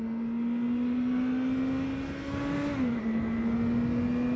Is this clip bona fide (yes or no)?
yes